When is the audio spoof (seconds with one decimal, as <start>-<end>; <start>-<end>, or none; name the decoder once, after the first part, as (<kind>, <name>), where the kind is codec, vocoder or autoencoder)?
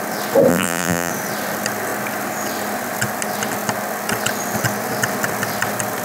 0.5-1.1 (vocoder, BigVGAN v2)